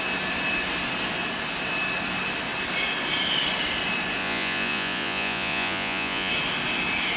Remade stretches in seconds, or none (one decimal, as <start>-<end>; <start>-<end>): 4.2-6.3